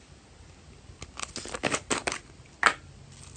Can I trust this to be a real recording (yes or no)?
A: yes